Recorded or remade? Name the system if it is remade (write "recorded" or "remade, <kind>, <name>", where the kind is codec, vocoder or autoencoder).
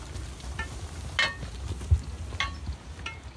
recorded